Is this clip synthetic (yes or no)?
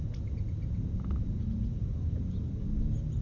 no